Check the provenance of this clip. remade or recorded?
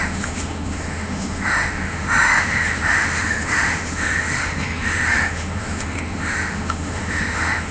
remade